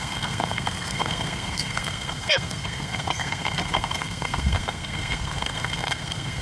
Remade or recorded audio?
remade